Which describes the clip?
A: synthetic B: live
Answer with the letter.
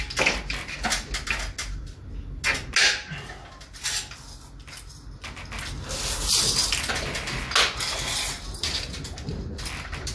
B